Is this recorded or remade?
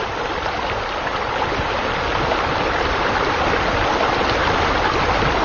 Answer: recorded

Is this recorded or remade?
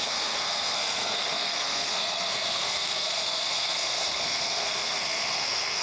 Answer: remade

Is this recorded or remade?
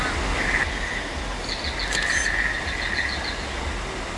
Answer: recorded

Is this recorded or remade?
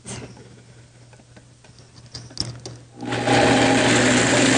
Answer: recorded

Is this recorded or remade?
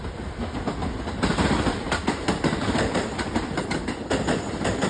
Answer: recorded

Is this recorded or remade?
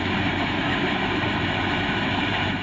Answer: remade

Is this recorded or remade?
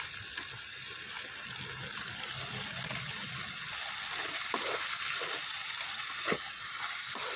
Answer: recorded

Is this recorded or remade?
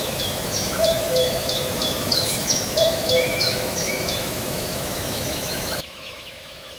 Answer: remade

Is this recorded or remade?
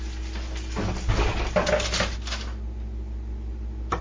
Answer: recorded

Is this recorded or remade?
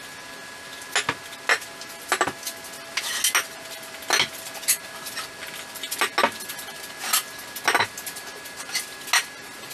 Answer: recorded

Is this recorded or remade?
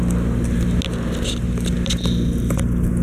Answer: recorded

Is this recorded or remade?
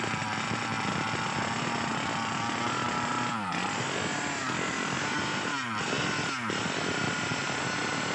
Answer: recorded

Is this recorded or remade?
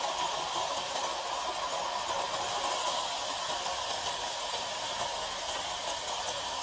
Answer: recorded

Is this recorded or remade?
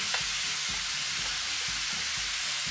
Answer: recorded